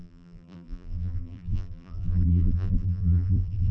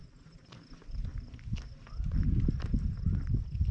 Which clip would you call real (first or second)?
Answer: second